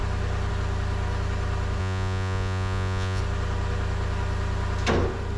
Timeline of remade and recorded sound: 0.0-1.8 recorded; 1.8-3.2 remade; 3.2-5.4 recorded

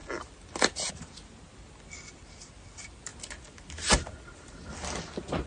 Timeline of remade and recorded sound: 0.0-5.5 recorded

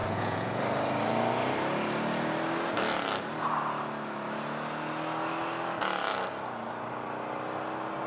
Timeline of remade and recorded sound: 0.0-0.6 remade; 0.6-8.1 recorded

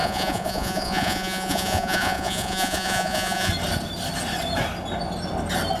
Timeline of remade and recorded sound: 0.0-3.5 remade; 3.5-5.8 recorded

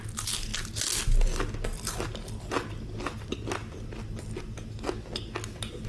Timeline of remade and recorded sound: 0.0-5.9 recorded

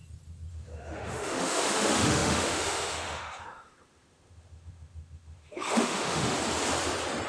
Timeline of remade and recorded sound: 0.0-0.5 recorded; 0.5-6.3 remade; 6.3-7.3 recorded